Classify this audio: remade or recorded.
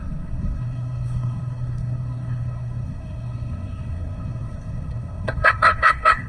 remade